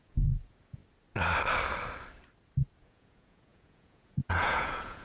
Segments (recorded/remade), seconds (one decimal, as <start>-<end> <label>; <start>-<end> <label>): 0.0-0.8 remade; 0.8-2.8 recorded; 2.8-5.0 remade